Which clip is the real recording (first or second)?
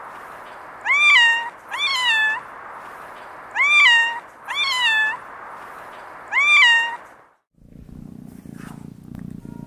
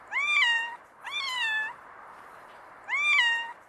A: first